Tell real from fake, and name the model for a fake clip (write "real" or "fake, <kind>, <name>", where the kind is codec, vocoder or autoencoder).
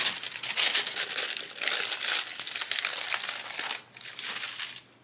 real